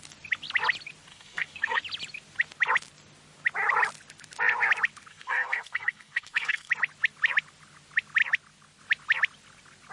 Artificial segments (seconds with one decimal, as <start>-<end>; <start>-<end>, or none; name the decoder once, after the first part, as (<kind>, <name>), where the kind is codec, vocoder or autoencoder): 1.1-1.8 (codec, SNAC); 5.1-6.7